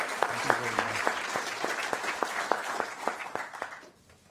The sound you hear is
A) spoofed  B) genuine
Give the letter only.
A